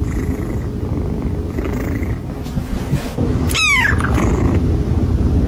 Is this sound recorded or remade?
recorded